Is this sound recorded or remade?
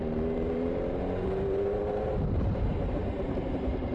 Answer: remade